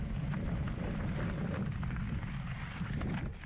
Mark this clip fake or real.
fake